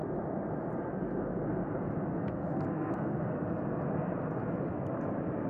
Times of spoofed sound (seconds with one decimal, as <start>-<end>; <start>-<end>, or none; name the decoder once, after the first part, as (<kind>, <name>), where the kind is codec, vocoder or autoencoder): 2.1-3.2 (codec, SNAC)